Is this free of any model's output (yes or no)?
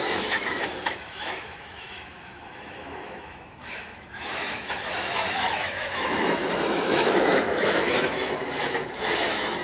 no